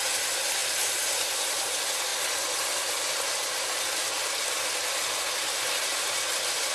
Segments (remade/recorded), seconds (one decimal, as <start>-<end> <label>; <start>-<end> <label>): 0.0-6.7 recorded